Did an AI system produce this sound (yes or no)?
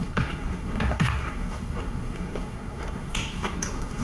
yes